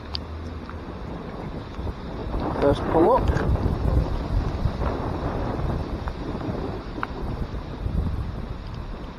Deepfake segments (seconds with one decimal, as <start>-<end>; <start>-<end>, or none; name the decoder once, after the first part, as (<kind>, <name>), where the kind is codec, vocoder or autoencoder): 2.2-3.4 (vocoder, BigVGAN v2); 5.8-7.4